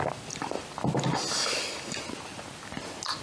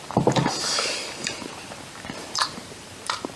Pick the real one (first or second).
first